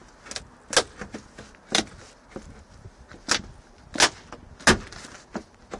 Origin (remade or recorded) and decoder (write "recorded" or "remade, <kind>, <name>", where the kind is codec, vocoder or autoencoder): recorded